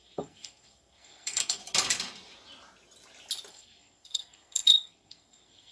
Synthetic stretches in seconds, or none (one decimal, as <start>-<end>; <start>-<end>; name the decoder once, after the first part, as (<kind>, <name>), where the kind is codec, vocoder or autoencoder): 0.0-1.6 (codec, SNAC); 3.5-5.7